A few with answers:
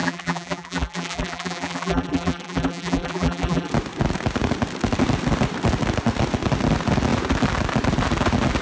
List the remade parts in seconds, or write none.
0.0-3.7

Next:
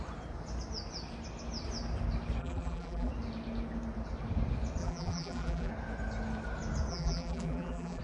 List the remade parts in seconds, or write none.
2.4-3.1; 4.8-5.7; 6.9-8.0

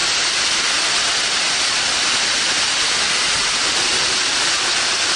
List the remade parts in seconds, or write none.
none

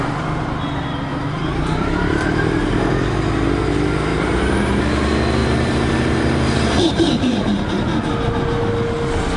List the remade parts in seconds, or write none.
1.1-2.9; 4.1-4.8; 5.4-7.1